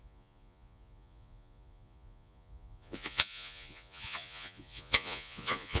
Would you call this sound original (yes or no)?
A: no